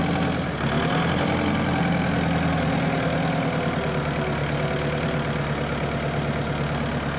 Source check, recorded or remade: recorded